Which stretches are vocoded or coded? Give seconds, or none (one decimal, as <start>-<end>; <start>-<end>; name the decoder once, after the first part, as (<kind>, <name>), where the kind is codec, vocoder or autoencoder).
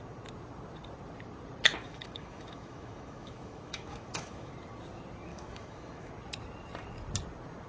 1.8-4.5 (autoencoder, DAC-VAE); 5.3-6.1